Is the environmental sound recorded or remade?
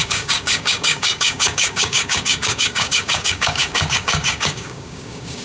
remade